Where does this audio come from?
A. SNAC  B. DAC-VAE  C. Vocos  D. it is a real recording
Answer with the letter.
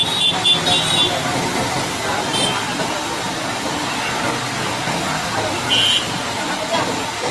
D